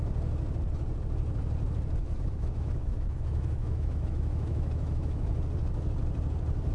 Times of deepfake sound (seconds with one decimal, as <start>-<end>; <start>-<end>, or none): 2.0-5.3